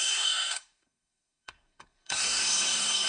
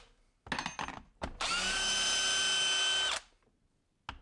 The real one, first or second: second